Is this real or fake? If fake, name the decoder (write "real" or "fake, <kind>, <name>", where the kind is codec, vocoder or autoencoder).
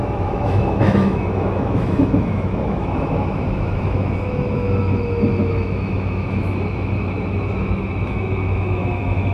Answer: fake, autoencoder, DAC-VAE